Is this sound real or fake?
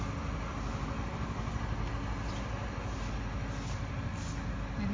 real